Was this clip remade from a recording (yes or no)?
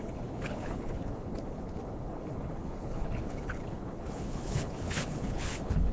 yes